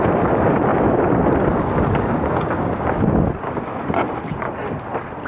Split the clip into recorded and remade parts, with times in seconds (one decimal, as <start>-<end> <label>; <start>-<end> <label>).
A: 0.0-5.3 recorded